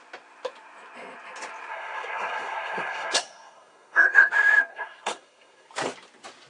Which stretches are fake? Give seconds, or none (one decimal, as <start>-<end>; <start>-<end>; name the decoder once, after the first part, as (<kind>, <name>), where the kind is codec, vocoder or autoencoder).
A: 1.7-4.3 (codec, SNAC); 4.7-5.7